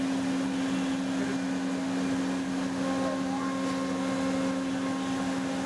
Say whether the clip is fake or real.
real